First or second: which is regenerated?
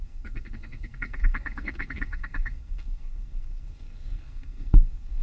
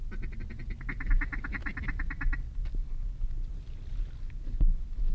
first